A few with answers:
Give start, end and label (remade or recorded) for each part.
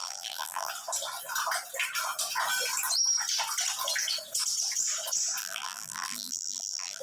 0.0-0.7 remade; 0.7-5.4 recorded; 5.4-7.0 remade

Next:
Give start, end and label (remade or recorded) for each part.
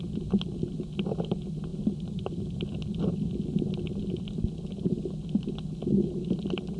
0.0-1.7 recorded; 1.7-2.4 remade; 2.4-6.8 recorded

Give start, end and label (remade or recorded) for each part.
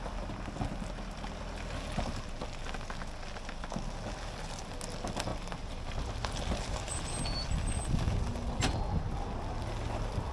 0.0-5.3 recorded; 5.3-6.1 remade; 6.1-10.3 recorded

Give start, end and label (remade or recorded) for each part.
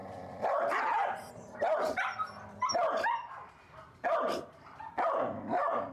0.0-1.3 remade; 1.3-2.7 recorded; 2.7-5.9 remade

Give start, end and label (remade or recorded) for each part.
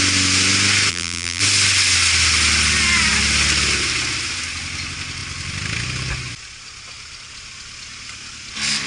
0.0-0.9 recorded; 0.9-1.4 remade; 1.4-8.9 recorded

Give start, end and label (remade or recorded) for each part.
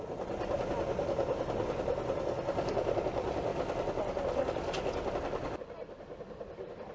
0.0-6.9 recorded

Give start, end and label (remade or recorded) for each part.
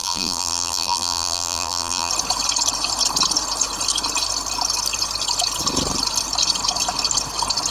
0.0-2.1 remade; 2.1-7.7 recorded